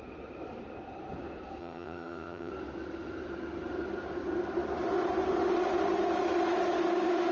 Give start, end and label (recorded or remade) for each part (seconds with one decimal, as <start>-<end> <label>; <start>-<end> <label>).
0.0-1.6 recorded; 1.6-2.5 remade; 2.5-7.3 recorded